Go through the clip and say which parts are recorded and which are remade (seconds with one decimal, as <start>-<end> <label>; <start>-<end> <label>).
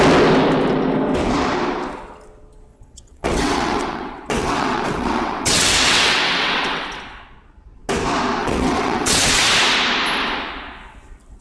0.0-2.7 recorded; 2.7-7.0 remade; 7.0-8.4 recorded; 8.4-9.4 remade; 9.4-11.4 recorded